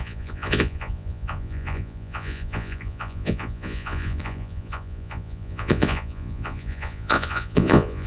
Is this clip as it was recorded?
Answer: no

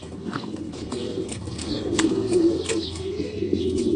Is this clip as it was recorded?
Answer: no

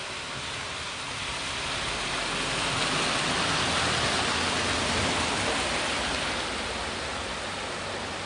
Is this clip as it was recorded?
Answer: yes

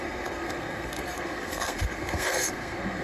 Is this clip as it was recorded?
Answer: no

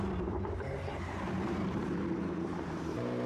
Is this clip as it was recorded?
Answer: no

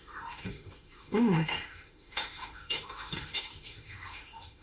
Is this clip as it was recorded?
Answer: no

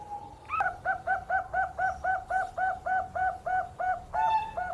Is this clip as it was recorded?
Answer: yes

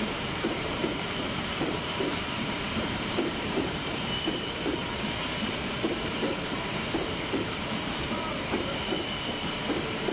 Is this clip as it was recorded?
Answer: no